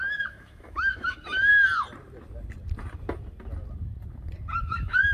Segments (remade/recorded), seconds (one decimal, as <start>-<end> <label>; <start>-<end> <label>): 0.0-1.5 remade; 1.5-4.6 recorded; 4.6-5.1 remade